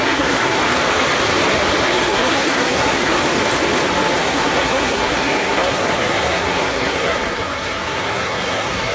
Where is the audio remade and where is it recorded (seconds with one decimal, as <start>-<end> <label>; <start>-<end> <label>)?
0.0-0.6 remade; 0.6-1.8 recorded; 1.8-3.2 remade; 3.2-4.2 recorded; 4.2-8.9 remade